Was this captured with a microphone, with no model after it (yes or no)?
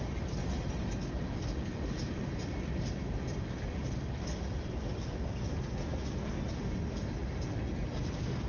yes